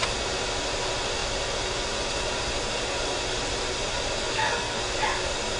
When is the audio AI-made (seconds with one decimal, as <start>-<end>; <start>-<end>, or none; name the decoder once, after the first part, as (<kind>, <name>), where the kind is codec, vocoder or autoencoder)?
4.3-4.8 (codec, SNAC)